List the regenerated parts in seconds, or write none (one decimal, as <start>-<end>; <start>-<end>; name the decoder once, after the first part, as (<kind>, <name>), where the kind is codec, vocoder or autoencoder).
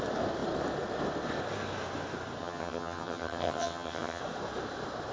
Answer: 2.4-4.2 (vocoder, HiFi-GAN)